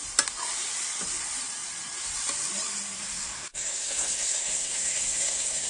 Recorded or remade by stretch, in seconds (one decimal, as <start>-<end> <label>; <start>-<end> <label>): 0.0-3.0 recorded; 3.0-5.7 remade